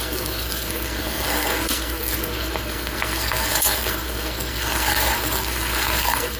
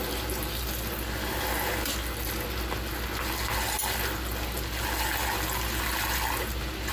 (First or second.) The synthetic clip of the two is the first